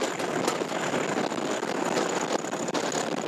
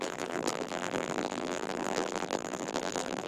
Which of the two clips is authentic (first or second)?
first